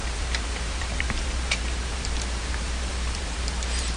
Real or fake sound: fake